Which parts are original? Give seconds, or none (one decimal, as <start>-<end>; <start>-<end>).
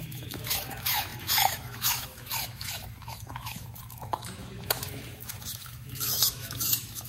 none